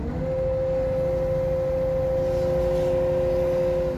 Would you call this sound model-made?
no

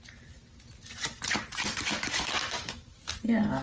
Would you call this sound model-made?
no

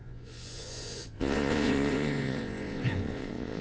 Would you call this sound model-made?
yes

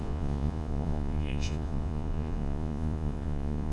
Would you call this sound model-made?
yes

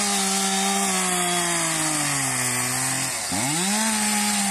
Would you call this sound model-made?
no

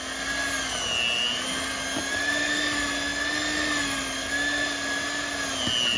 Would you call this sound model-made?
no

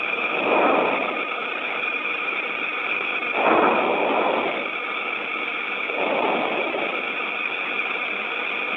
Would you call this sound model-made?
no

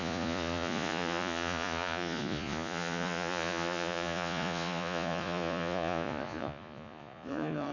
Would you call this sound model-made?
yes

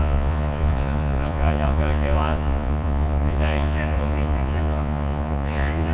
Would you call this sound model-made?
yes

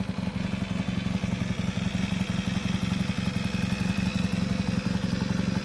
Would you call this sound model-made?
no